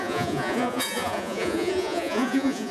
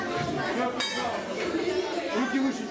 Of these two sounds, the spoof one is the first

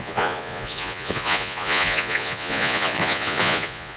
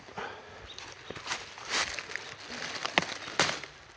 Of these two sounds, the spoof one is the first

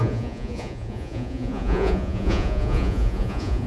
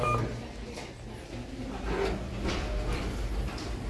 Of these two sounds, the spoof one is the first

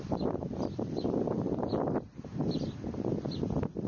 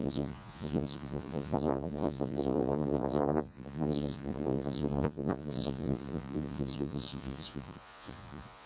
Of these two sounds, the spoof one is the second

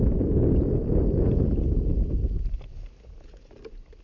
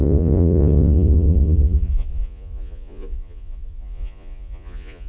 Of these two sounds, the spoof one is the second